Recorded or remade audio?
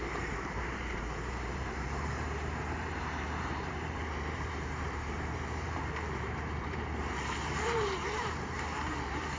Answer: remade